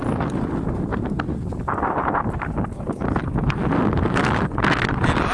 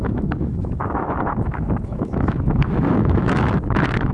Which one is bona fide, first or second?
first